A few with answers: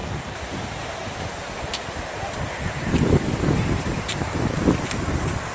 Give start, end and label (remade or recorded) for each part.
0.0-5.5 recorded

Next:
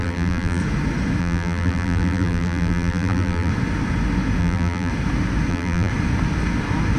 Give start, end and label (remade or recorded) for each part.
0.0-0.6 remade; 0.6-1.2 recorded; 1.2-3.5 remade; 3.5-4.4 recorded; 4.4-4.9 remade; 4.9-5.5 recorded; 5.5-5.9 remade; 5.9-7.0 recorded

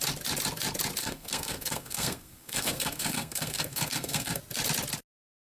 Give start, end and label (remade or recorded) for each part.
0.0-1.0 recorded; 1.0-4.4 remade; 4.4-5.6 recorded

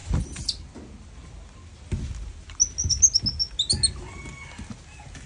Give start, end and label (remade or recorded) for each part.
0.0-5.3 recorded